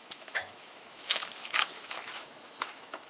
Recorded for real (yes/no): no